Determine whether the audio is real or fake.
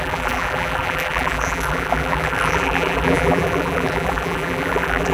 fake